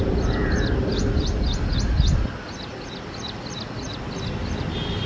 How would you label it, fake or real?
real